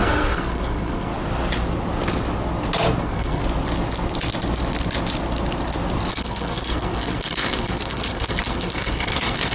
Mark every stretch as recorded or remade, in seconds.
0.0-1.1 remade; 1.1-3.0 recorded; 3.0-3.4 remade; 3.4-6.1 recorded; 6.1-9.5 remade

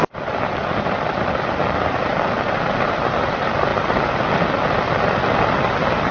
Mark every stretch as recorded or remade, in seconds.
0.0-6.1 recorded